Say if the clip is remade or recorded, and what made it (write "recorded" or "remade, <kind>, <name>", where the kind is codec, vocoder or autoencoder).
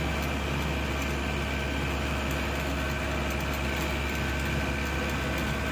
recorded